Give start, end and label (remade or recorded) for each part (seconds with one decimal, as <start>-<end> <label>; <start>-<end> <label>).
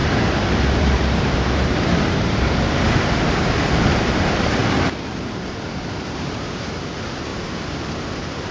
0.0-0.6 recorded; 0.6-4.6 remade; 4.6-5.5 recorded; 5.5-8.5 remade